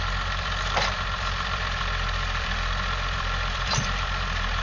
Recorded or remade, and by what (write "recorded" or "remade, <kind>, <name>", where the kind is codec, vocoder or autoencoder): remade, vocoder, BigVGAN v2